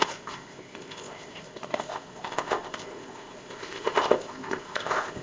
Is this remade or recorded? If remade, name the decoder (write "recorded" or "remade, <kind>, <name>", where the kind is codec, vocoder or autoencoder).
remade, codec, ZipCodec